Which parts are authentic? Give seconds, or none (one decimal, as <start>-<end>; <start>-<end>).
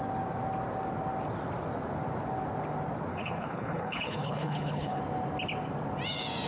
0.0-3.1; 5.0-6.5